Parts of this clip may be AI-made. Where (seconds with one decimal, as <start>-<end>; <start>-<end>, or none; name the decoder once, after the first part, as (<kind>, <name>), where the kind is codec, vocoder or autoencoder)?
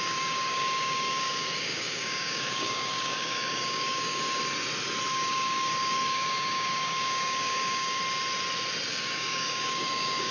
0.0-4.4 (codec, DAC); 5.1-8.0; 8.9-10.3